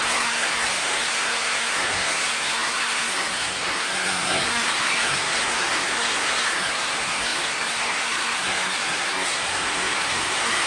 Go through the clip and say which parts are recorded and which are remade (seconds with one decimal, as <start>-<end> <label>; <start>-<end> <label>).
0.0-10.7 remade